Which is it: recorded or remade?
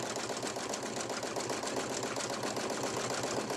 recorded